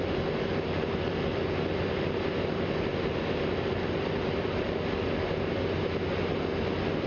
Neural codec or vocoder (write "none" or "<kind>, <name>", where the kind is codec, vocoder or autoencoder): none